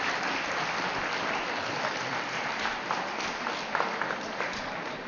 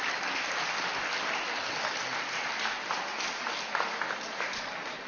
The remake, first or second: first